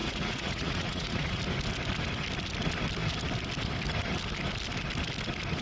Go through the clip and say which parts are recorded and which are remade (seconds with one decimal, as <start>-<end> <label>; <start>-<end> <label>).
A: 0.0-1.4 remade; 1.4-5.6 recorded